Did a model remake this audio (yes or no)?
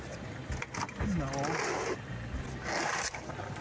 no